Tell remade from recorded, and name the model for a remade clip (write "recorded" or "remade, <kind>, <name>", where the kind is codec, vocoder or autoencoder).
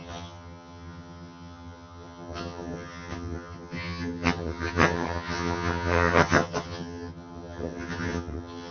remade, vocoder, HiFi-GAN